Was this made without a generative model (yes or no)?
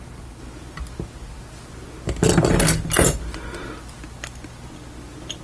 yes